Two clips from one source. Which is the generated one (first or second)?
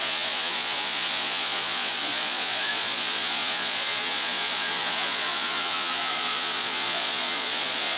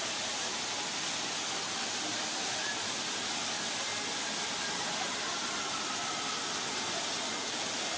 first